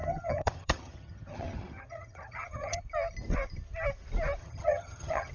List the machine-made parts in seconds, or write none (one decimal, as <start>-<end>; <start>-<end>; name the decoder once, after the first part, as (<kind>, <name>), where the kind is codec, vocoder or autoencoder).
0.0-2.8 (vocoder, HiFi-GAN); 4.4-5.3